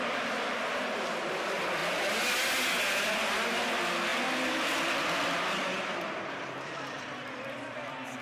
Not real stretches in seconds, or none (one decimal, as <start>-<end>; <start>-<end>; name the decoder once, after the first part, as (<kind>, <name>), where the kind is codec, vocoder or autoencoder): 0.0-1.8 (vocoder, BigVGAN v2); 2.3-8.2

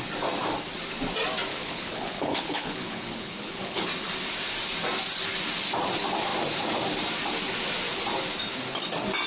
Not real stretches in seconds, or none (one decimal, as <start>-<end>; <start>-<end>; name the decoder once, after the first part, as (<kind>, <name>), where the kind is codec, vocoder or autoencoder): 1.5-3.9 (codec, HILCodec)

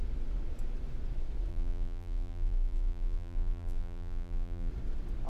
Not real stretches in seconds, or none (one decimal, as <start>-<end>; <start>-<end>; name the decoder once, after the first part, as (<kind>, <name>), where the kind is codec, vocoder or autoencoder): 1.5-4.7 (vocoder, BigVGAN v2)

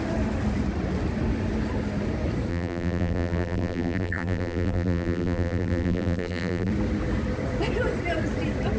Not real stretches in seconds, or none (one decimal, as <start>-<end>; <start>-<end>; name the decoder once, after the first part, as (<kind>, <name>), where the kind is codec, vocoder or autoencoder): 2.5-6.7 (vocoder, BigVGAN v2)

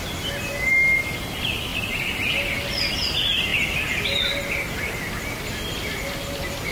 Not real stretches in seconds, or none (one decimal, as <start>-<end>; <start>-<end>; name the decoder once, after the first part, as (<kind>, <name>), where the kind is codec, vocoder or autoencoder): none

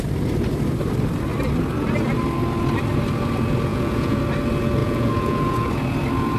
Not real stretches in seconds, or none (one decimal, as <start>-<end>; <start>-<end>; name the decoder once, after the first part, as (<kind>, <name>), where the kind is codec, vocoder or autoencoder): 3.7-4.2 (vocoder, Vocos); 4.8-5.7

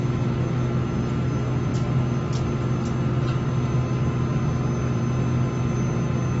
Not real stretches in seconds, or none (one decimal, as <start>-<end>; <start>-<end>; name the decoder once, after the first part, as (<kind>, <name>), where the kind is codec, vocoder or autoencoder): none

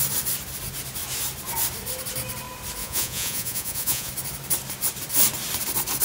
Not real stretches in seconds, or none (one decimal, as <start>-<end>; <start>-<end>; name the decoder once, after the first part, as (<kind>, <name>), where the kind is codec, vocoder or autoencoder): 2.8-4.1 (vocoder, Vocos)